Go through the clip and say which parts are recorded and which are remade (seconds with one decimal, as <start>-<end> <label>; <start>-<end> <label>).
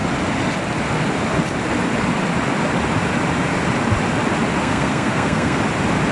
0.0-4.6 recorded; 4.6-5.6 remade; 5.6-6.1 recorded